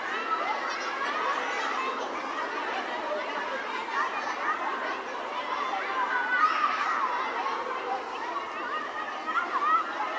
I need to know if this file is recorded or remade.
recorded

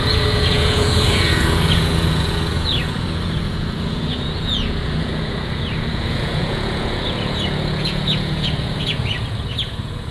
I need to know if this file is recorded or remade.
remade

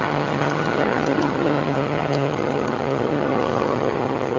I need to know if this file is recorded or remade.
remade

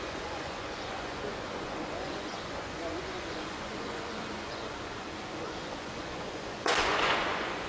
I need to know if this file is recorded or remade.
remade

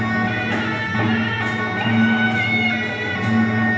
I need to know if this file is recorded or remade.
recorded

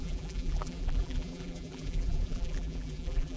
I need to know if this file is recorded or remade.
remade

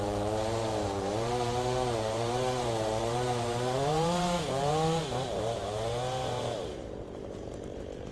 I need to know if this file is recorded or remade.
remade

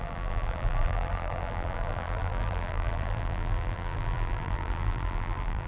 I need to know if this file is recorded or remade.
remade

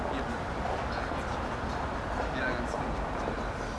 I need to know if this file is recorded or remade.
recorded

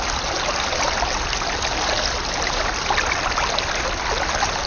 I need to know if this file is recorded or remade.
recorded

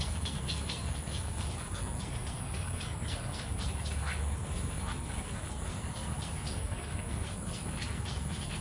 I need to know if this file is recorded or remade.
remade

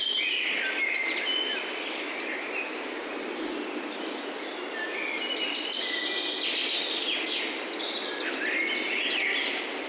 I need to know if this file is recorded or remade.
recorded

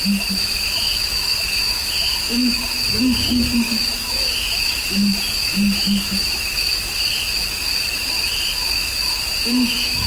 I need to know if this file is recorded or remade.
remade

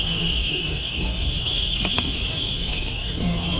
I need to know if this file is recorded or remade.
remade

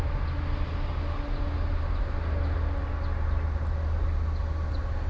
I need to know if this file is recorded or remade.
recorded